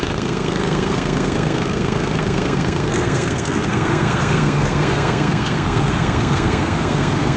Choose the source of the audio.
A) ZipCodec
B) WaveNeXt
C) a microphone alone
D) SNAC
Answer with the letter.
D